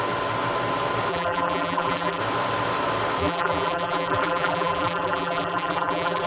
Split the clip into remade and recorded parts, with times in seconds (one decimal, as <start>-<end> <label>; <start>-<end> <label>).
0.0-1.1 recorded; 1.1-2.2 remade; 2.2-3.2 recorded; 3.2-6.3 remade